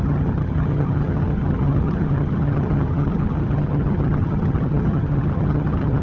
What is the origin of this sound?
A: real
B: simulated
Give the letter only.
B